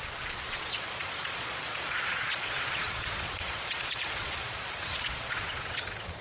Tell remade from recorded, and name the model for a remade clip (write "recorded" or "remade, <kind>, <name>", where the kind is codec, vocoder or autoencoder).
remade, vocoder, Vocos